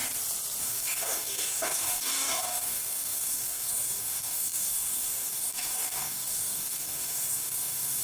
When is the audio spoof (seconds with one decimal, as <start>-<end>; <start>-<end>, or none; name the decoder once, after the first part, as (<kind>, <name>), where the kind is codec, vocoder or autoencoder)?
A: 0.6-8.0 (codec, DAC)